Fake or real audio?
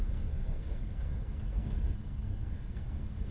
fake